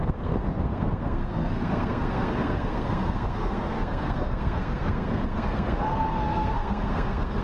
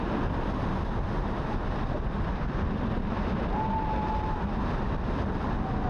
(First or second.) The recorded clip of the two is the second